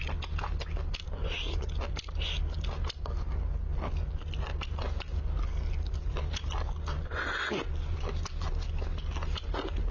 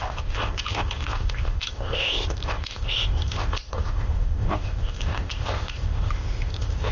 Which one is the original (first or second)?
first